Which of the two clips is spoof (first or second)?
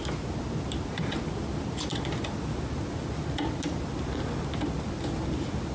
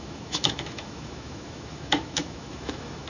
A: second